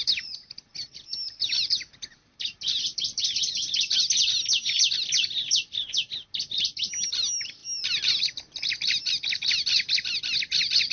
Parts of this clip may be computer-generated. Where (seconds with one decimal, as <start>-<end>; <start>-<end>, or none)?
none

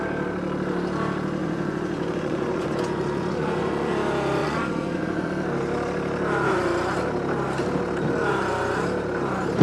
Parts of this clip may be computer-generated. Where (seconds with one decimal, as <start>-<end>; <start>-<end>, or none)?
1.4-3.9; 4.4-5.3

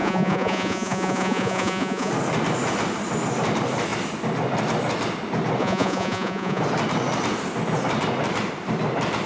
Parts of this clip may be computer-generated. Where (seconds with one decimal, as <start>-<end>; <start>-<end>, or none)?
0.0-2.1; 5.6-6.6

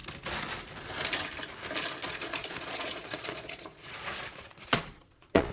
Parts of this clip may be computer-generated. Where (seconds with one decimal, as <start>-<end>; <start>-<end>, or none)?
2.0-5.5

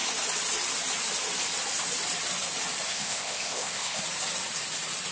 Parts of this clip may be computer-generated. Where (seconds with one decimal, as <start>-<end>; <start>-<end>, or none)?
2.9-4.0

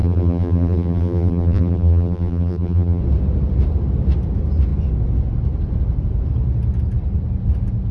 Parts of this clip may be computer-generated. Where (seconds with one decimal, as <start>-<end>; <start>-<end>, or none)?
0.0-3.0

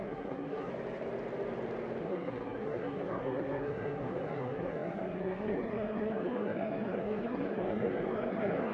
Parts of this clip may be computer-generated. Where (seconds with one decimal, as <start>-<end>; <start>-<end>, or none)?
0.0-0.7; 2.0-8.7

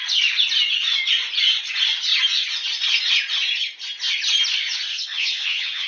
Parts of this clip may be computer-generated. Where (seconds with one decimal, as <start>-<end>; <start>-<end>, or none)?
4.9-5.9